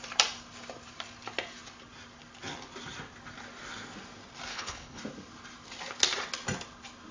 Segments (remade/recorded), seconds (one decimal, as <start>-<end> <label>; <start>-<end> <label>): 0.0-4.5 recorded; 4.5-5.0 remade; 5.0-7.1 recorded